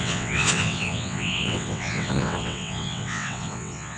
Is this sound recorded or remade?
remade